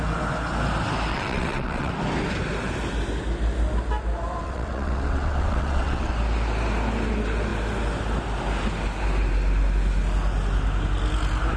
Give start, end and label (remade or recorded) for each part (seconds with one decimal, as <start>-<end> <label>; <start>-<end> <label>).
0.0-1.1 recorded; 1.1-1.9 remade; 1.9-4.4 recorded; 4.4-6.1 remade; 6.1-11.6 recorded